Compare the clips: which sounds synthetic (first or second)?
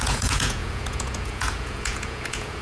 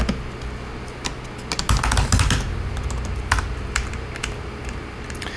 first